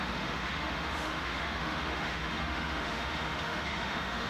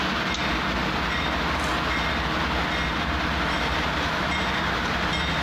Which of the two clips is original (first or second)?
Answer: second